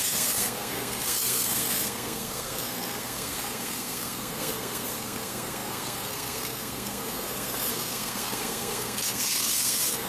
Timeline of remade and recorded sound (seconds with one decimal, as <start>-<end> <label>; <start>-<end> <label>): 0.0-10.1 remade